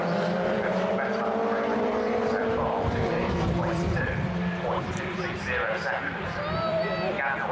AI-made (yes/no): yes